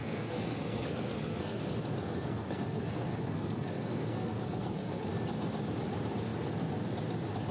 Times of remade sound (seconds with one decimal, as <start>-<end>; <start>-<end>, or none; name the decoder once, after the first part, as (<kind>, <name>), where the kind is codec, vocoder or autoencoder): 0.0-1.6 (codec, SNAC); 2.0-5.1